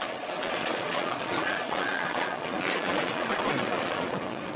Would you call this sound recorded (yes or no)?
no